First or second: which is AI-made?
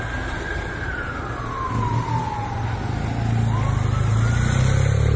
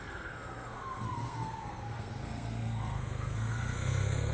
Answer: second